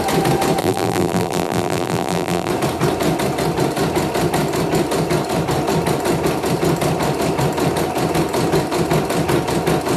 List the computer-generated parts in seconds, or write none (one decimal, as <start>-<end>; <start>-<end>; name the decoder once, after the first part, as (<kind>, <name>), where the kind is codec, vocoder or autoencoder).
0.6-2.5 (vocoder, BigVGAN v2)